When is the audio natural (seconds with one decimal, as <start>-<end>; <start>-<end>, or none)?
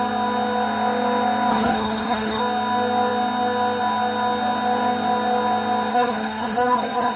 0.0-1.5; 2.4-5.9